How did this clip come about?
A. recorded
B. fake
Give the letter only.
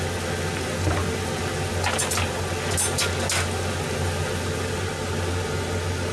A